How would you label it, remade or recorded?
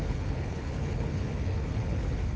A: remade